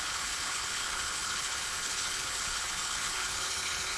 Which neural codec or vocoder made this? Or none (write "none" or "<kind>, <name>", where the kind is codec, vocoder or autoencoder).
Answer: codec, HILCodec